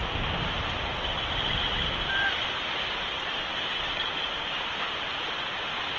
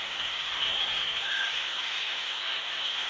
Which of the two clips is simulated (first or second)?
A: second